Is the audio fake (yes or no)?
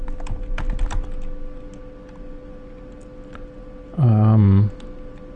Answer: no